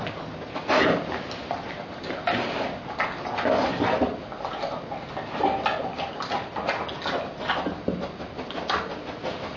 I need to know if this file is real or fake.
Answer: real